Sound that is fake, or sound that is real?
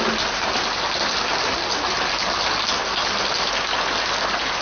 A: real